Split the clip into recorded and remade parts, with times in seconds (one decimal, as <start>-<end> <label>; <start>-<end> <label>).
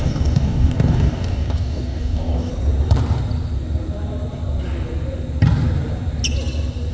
0.0-2.5 remade; 2.5-6.9 recorded